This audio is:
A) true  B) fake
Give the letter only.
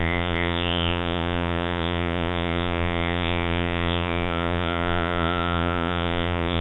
B